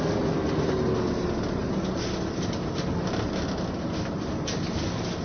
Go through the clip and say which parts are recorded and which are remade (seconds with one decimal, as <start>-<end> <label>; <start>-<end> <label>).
0.0-5.2 recorded